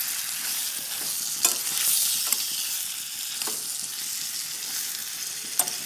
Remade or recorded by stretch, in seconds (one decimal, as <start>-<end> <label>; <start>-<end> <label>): 0.0-5.9 recorded